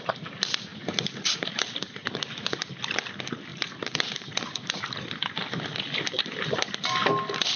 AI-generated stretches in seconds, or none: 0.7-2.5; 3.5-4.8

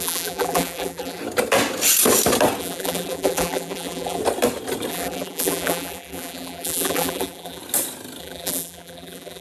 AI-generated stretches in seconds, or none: 0.0-1.2; 2.6-4.2; 4.9-7.6; 8.2-9.4

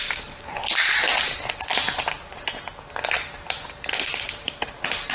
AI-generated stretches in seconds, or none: 0.0-1.0; 4.1-5.1

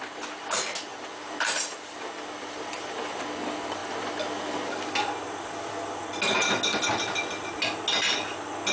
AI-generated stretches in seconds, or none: 0.9-3.2

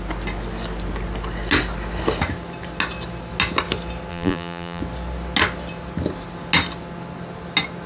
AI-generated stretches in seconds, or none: 4.1-4.8